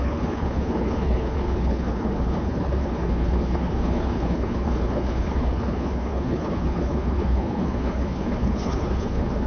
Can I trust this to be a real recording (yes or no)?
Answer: no